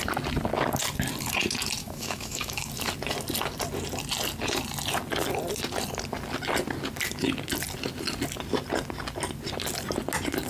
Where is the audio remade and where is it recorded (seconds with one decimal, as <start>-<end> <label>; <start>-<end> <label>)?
0.0-1.8 recorded; 1.8-2.7 remade; 2.7-10.5 recorded